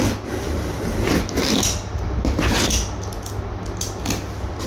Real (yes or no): yes